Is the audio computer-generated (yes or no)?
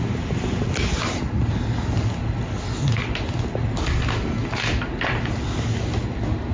no